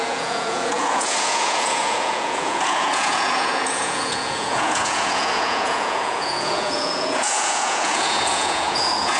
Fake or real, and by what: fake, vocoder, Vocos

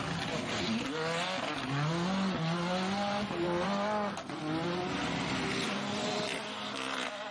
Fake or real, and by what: real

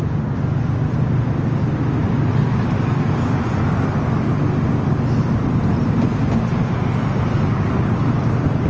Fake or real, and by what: real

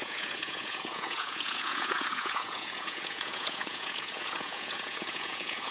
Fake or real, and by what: fake, vocoder, Vocos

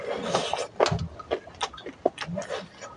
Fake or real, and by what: real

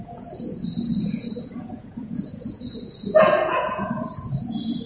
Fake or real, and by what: fake, vocoder, Vocos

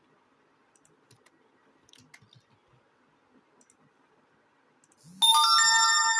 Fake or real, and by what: real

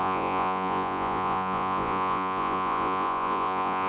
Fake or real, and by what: fake, vocoder, Vocos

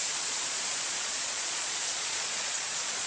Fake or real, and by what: fake, vocoder, Vocos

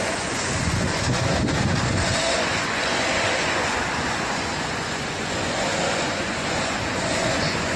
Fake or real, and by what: fake, vocoder, Vocos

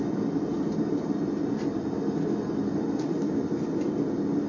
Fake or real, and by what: real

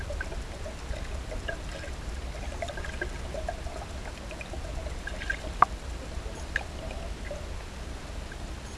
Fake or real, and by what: real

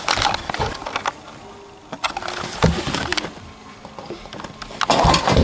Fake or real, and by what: real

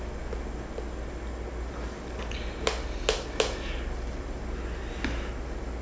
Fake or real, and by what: real